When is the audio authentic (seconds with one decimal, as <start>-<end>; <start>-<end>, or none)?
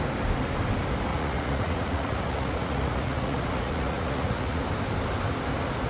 0.0-1.1; 4.6-5.9